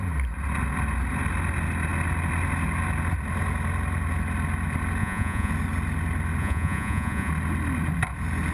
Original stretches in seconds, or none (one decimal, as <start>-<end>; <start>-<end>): 0.0-5.0; 5.5-6.4; 7.3-8.5